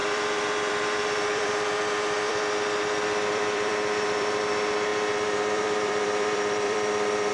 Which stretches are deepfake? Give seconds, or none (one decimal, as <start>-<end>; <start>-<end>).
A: 0.0-4.4; 4.9-7.3